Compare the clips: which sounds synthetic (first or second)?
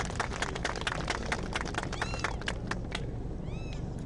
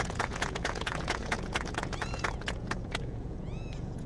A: second